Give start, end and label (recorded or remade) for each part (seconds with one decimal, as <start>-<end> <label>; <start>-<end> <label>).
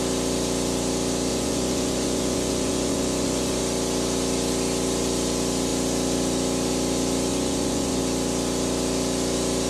0.0-1.3 recorded; 1.3-3.6 remade; 3.6-7.3 recorded; 7.3-8.0 remade; 8.0-9.7 recorded